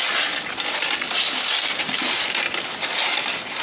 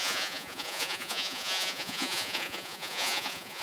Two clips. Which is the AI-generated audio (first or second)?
second